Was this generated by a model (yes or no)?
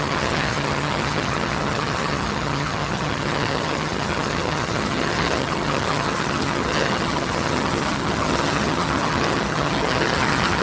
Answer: yes